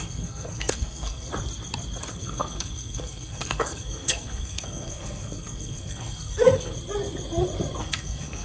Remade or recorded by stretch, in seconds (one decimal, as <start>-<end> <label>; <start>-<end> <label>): 0.0-1.3 remade; 1.3-2.1 recorded; 2.1-6.7 remade; 6.7-7.8 recorded; 7.8-8.4 remade